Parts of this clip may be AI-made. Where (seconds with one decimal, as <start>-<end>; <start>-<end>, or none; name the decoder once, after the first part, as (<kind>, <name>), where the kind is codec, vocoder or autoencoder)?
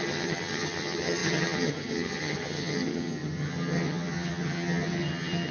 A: 0.0-5.5 (vocoder, HiFi-GAN)